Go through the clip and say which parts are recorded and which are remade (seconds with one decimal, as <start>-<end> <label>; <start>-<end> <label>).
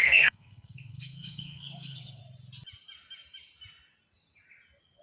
0.0-2.2 remade; 2.2-5.0 recorded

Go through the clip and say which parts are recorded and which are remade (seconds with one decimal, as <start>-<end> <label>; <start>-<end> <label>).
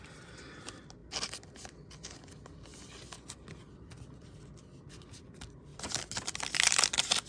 0.0-1.0 recorded; 1.0-1.7 remade; 1.7-5.7 recorded; 5.7-6.4 remade; 6.4-7.3 recorded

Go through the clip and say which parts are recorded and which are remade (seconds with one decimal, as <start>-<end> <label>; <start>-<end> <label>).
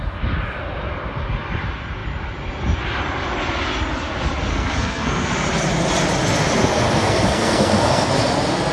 0.0-4.5 recorded; 4.5-5.3 remade; 5.3-7.0 recorded; 7.0-8.1 remade; 8.1-8.7 recorded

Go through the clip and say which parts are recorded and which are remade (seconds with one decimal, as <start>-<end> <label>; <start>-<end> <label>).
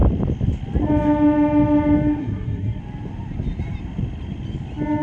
0.0-2.2 recorded; 2.2-2.8 remade; 2.8-5.0 recorded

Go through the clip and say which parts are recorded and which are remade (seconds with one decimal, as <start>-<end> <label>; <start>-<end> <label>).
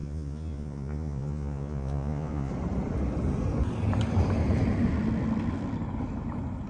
0.0-2.5 remade; 2.5-6.7 recorded